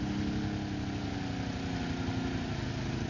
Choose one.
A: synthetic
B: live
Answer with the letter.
B